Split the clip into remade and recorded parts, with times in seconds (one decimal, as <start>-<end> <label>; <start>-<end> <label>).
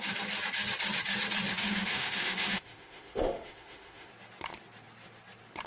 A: 0.0-1.6 recorded; 1.6-4.1 remade; 4.1-5.7 recorded